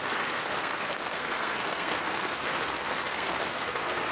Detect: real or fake fake